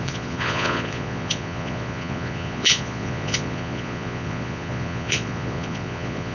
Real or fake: fake